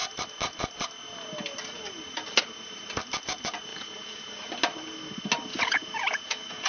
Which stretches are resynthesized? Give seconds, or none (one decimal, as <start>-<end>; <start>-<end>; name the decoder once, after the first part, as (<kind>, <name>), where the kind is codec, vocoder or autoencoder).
3.7-4.3 (vocoder, Vocos); 5.5-6.7